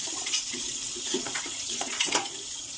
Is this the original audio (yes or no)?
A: no